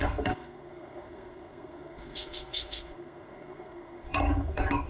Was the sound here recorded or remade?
remade